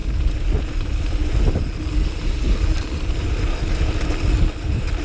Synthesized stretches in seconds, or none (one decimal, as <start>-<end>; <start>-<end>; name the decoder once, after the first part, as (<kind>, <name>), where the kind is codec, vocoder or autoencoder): none